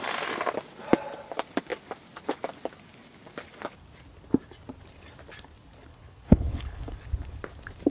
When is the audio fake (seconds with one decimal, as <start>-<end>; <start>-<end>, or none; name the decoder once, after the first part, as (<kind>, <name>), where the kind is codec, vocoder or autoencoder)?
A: 5.9-6.9 (codec, HILCodec)